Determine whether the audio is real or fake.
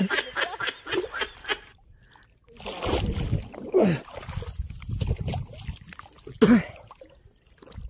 real